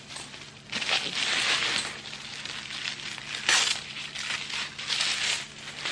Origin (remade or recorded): recorded